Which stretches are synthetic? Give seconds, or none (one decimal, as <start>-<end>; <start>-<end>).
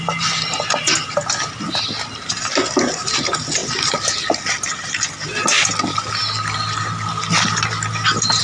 none